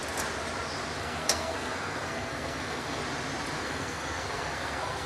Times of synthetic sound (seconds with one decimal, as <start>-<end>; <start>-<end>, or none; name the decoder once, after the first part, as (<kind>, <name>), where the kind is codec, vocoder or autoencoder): 1.0-3.0 (codec, SNAC); 3.6-5.1